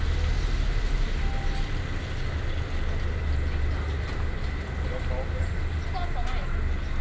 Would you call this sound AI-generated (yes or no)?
no